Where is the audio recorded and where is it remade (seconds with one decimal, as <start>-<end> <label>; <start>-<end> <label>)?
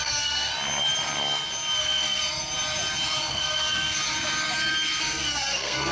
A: 0.0-0.5 remade; 0.5-1.8 recorded; 1.8-2.2 remade; 2.2-3.3 recorded; 3.3-4.0 remade; 4.0-5.0 recorded; 5.0-5.9 remade